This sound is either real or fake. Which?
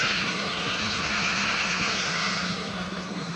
fake